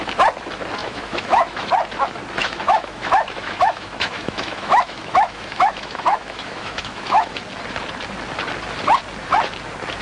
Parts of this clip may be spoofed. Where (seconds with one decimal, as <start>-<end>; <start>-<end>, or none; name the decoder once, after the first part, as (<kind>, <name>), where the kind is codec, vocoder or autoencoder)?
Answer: 0.8-1.7 (autoencoder, DAC-VAE); 2.4-7.4